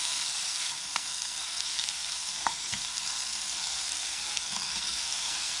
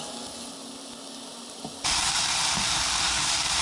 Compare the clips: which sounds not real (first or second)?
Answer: first